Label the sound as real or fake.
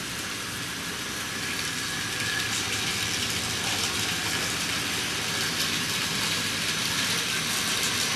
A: real